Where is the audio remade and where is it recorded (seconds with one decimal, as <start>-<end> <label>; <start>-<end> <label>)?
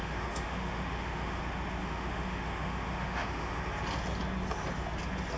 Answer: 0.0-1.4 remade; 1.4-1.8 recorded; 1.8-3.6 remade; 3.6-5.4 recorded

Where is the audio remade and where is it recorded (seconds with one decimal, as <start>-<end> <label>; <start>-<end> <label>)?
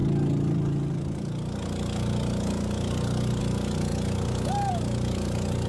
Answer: 0.0-5.7 recorded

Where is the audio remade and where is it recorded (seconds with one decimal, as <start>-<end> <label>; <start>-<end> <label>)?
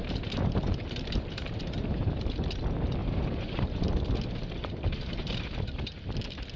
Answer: 0.0-1.6 remade; 1.6-3.0 recorded; 3.0-3.9 remade; 3.9-4.6 recorded; 4.6-5.3 remade; 5.3-6.6 recorded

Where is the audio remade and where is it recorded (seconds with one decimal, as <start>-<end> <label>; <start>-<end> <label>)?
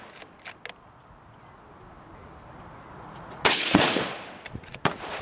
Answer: 0.0-2.9 recorded; 2.9-4.0 remade; 4.0-4.5 recorded; 4.5-5.2 remade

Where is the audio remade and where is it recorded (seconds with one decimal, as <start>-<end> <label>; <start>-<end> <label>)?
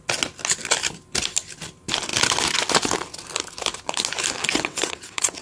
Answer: 0.0-4.5 recorded; 4.5-5.4 remade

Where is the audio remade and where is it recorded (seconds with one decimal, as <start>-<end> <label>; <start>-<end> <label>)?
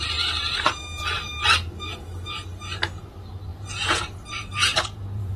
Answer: 0.0-3.5 recorded; 3.5-5.4 remade